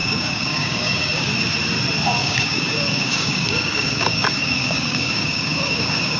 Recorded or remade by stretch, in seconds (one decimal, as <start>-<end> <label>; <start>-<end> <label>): 0.0-1.3 remade; 1.3-2.2 recorded; 2.2-6.2 remade

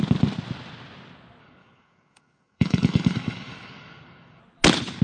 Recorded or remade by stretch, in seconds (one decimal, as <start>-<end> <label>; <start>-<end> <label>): 0.0-1.4 recorded; 1.4-4.4 remade; 4.4-5.0 recorded

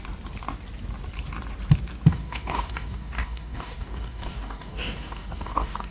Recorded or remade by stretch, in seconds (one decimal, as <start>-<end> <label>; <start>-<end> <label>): 0.0-2.1 recorded; 2.1-5.9 remade

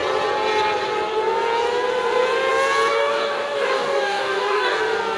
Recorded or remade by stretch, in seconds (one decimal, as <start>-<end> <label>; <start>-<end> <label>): 0.0-2.9 recorded; 2.9-4.8 remade; 4.8-5.2 recorded

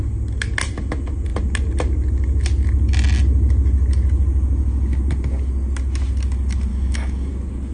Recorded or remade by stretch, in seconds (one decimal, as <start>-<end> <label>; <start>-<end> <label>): 0.0-6.7 recorded; 6.7-7.3 remade; 7.3-7.7 recorded